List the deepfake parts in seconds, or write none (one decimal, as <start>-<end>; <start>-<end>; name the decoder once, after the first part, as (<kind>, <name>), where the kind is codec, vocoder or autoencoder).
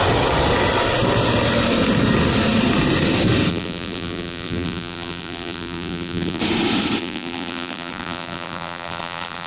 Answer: 3.5-6.4 (vocoder, BigVGAN v2); 7.0-9.5